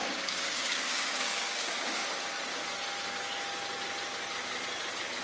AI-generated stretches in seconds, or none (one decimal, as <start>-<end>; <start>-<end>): 0.0-2.0